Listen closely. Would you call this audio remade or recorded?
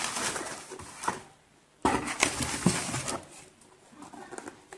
recorded